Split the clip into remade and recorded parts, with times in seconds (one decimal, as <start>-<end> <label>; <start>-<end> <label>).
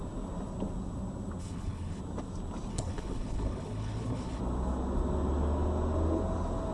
0.0-1.4 recorded; 1.4-2.0 remade; 2.0-2.7 recorded; 2.7-4.4 remade; 4.4-6.7 recorded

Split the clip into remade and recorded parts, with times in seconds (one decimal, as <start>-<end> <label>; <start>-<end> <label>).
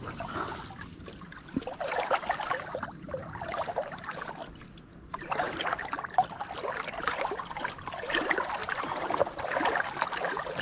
0.0-3.2 recorded; 3.2-3.9 remade; 3.9-8.6 recorded; 8.6-9.4 remade; 9.4-10.6 recorded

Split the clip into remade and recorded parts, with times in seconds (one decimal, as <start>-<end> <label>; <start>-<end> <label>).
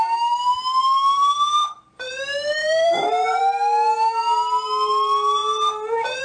0.0-1.6 recorded; 1.6-2.2 remade; 2.2-2.6 recorded; 2.6-3.4 remade; 3.4-6.2 recorded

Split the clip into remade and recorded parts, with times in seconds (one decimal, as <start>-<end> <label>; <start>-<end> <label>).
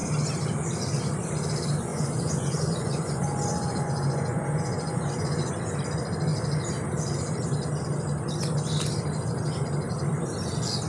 0.0-1.9 recorded; 1.9-5.5 remade; 5.5-10.9 recorded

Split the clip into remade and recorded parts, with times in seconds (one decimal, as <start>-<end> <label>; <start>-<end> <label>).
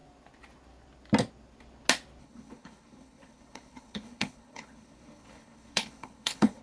0.0-2.2 recorded; 2.2-6.6 remade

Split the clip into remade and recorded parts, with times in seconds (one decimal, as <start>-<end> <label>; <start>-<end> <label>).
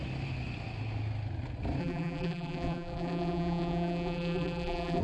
0.0-1.8 recorded; 1.8-5.0 remade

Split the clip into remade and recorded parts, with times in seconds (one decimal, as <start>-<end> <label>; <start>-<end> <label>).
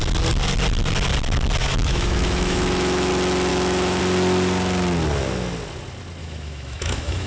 0.0-1.6 recorded; 1.6-3.1 remade; 3.1-3.5 recorded; 3.5-4.0 remade; 4.0-6.2 recorded; 6.2-7.3 remade